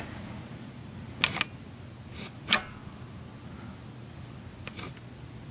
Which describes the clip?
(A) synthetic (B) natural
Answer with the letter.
B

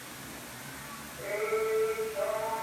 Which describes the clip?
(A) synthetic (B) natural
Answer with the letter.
B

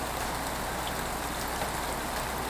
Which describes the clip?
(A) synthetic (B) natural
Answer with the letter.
B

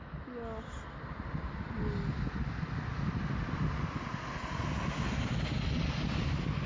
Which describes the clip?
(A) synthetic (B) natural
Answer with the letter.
B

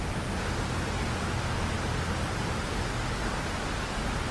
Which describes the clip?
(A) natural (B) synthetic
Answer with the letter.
A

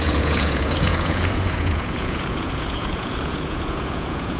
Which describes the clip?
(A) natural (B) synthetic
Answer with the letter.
B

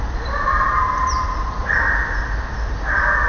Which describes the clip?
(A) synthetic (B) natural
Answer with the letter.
B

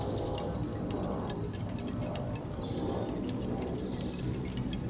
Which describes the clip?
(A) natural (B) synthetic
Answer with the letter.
A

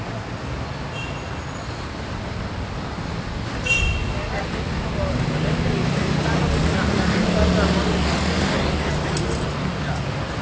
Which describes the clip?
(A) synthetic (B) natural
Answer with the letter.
B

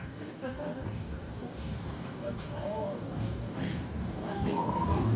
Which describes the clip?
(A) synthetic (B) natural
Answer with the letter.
A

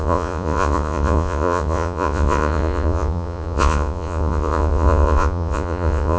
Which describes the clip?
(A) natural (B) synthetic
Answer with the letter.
B